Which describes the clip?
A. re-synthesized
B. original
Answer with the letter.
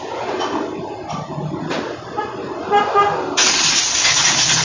B